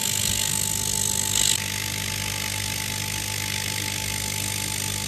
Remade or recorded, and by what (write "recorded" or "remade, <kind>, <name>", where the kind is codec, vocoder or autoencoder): recorded